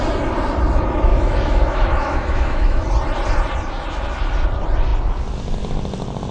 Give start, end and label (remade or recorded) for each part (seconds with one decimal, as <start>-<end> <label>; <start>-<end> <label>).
0.0-1.1 recorded; 1.1-2.9 remade; 2.9-6.3 recorded